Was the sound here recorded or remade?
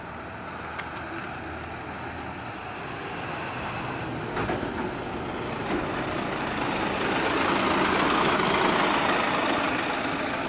recorded